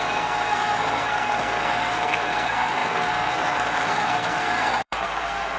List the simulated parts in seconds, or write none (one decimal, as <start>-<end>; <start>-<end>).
0.0-5.6